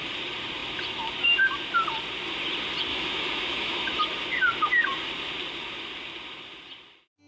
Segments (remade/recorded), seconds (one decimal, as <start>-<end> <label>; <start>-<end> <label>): 0.0-2.9 recorded; 2.9-4.0 remade; 4.0-7.3 recorded